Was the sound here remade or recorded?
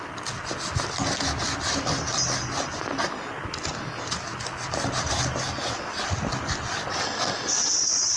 recorded